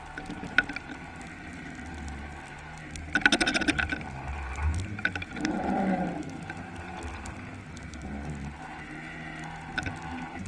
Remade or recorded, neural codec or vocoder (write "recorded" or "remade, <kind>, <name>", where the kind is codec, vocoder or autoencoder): recorded